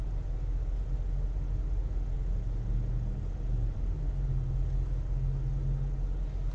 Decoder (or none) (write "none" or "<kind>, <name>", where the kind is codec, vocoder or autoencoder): none